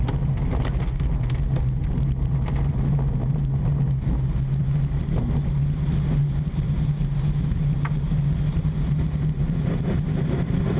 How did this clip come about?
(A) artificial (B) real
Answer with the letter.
B